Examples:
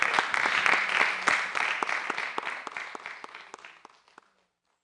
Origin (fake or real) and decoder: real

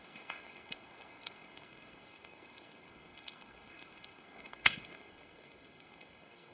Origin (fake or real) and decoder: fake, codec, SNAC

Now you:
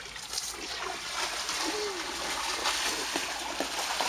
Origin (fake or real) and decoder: real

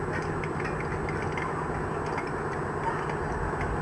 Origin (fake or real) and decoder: real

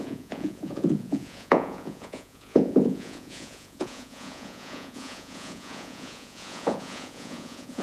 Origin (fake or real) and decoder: fake, vocoder, Vocos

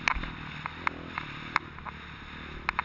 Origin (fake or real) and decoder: real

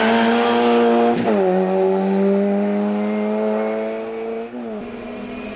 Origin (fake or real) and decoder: real